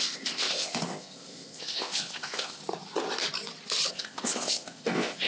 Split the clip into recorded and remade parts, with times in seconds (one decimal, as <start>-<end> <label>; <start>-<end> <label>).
0.0-2.6 remade; 2.6-3.9 recorded; 3.9-5.3 remade